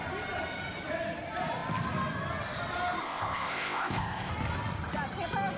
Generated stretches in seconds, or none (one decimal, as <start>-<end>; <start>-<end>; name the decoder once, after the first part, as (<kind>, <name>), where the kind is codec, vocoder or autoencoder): 3.0-4.3 (codec, ZipCodec)